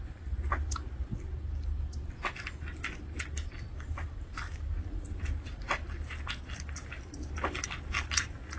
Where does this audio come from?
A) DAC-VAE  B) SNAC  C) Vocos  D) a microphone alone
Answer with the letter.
D